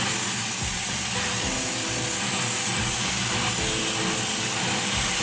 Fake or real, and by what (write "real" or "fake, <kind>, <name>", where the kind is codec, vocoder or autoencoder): real